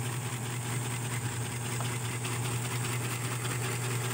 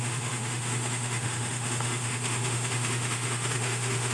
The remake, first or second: second